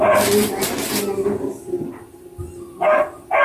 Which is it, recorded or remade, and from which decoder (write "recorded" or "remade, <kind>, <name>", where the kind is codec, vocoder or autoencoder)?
recorded